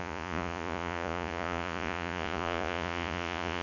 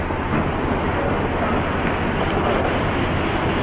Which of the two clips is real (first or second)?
second